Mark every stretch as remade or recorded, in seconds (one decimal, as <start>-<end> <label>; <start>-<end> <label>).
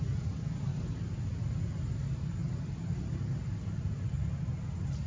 0.0-2.4 recorded; 2.4-3.4 remade; 3.4-5.1 recorded